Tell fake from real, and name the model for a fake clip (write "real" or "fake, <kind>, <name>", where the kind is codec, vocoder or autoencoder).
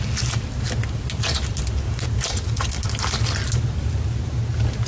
real